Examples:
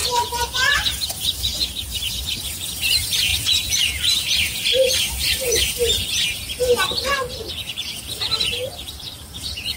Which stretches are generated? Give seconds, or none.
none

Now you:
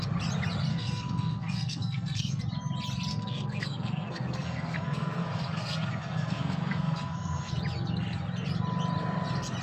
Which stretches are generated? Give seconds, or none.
0.7-2.4 (codec, SNAC); 3.1-7.5

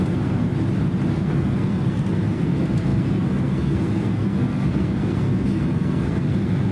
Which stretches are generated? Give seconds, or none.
0.0-0.5 (codec, SNAC); 1.1-6.7

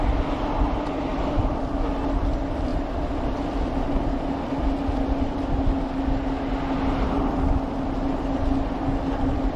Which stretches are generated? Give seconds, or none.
none